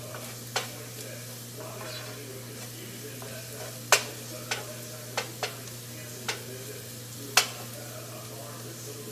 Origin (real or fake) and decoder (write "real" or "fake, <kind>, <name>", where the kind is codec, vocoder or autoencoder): real